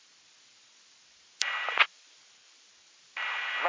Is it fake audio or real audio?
real